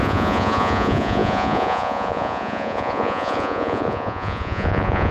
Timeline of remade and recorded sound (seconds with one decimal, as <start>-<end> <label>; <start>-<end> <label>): 0.0-5.1 remade